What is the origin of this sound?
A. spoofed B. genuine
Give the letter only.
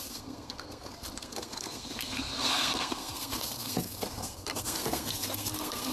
A